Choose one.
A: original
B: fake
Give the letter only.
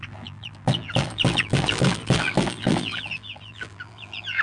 B